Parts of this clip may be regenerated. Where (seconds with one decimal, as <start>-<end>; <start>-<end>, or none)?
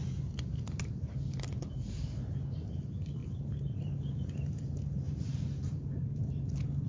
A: 0.0-1.1; 3.2-6.3